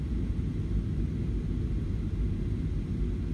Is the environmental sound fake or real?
real